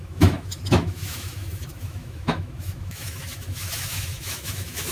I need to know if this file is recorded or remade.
remade